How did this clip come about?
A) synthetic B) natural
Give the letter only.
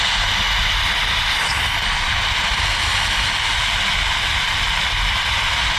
B